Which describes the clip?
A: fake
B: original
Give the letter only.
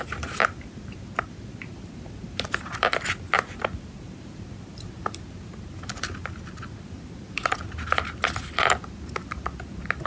B